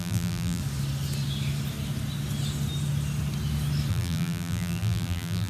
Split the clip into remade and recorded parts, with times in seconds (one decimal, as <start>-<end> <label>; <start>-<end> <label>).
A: 0.0-0.6 remade; 0.6-3.9 recorded; 3.9-5.5 remade